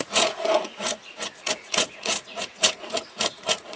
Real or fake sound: fake